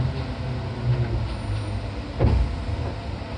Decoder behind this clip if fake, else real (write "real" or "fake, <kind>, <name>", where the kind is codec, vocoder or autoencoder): real